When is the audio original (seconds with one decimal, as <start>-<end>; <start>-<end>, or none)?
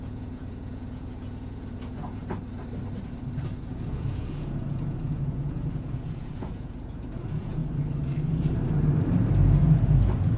2.2-3.7; 7.6-9.3